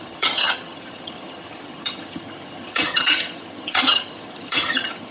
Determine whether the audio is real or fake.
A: fake